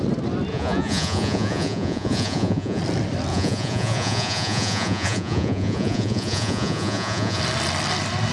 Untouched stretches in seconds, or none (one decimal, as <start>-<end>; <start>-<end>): 0.0-0.5; 2.8-3.3; 7.4-8.3